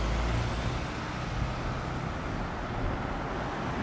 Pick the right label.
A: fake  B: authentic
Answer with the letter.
B